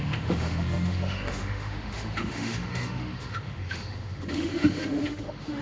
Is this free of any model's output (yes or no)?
no